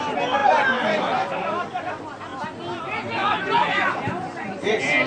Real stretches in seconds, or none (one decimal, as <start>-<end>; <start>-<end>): 0.0-0.4; 1.9-3.2; 4.6-5.1